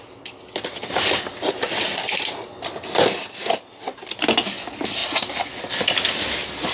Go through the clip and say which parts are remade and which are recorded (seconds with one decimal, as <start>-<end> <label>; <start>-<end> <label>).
0.0-6.7 recorded